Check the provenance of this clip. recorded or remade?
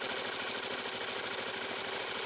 recorded